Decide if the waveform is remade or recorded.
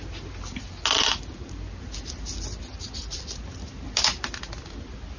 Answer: recorded